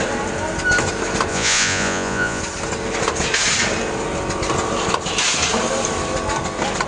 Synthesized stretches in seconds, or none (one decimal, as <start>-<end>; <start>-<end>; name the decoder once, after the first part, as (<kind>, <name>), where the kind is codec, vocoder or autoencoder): 1.3-2.4 (vocoder, Vocos)